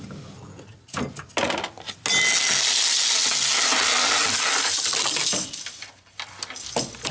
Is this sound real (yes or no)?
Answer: yes